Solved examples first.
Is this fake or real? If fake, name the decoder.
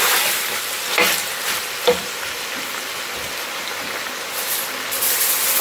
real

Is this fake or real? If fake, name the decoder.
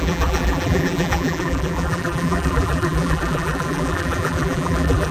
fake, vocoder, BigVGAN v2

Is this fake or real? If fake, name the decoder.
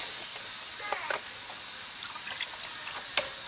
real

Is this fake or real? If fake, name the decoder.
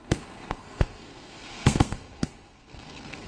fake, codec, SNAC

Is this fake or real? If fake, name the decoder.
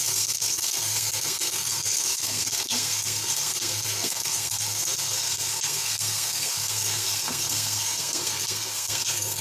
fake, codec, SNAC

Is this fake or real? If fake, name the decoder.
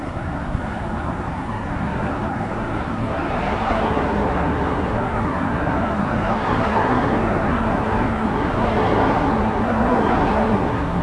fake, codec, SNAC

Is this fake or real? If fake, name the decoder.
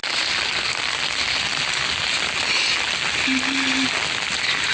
real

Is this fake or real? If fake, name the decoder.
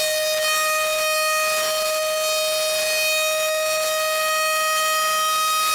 real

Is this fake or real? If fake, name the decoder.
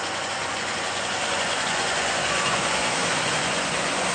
fake, vocoder, Vocos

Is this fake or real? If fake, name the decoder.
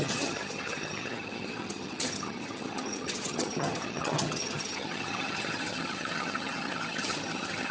fake, vocoder, HiFi-GAN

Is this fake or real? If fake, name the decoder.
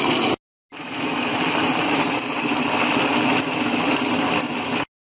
real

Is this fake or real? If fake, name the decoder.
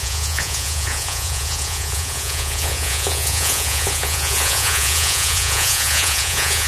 fake, vocoder, Vocos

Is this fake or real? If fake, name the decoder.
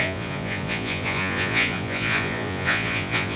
fake, vocoder, Vocos